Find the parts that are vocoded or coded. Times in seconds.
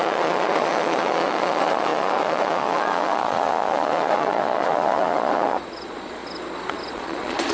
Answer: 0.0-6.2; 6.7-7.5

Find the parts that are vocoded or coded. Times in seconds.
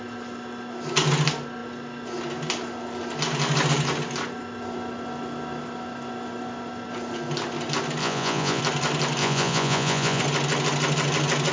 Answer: 8.0-8.6; 9.2-10.2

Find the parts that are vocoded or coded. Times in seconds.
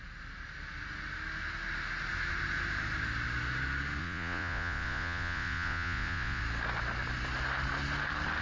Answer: 4.0-6.4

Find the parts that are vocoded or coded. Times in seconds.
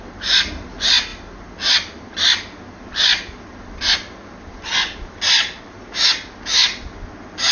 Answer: none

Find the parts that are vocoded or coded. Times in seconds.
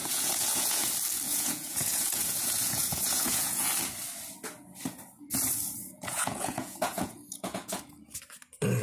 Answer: 0.0-0.9; 1.3-3.7; 5.8-7.8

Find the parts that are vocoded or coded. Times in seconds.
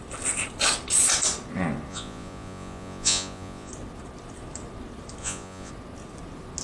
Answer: 1.9-3.7; 5.2-5.7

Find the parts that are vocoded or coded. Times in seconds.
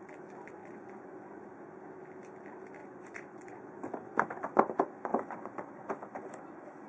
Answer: 0.6-1.4; 2.8-3.6; 5.1-5.9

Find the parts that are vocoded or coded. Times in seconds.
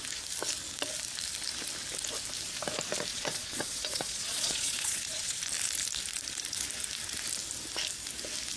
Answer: 3.1-5.4